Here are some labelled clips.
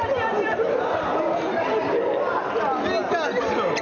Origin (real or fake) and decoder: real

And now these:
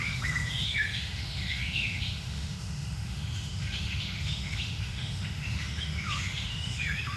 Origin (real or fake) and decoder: fake, autoencoder, DAC-VAE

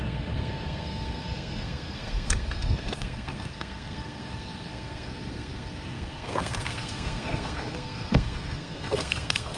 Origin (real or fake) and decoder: fake, codec, SNAC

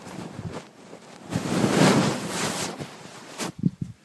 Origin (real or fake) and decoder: fake, vocoder, BigVGAN v2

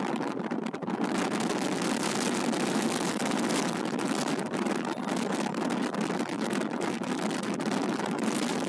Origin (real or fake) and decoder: real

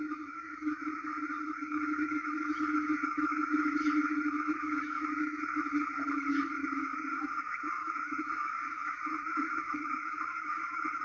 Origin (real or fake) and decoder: fake, autoencoder, DAC-VAE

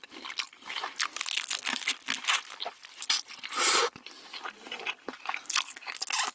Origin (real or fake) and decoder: real